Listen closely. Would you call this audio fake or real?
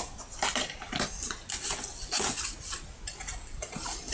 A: real